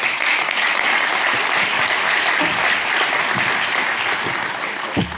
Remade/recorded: recorded